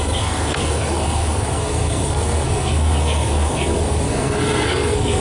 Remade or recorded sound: remade